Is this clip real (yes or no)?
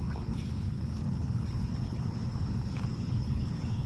no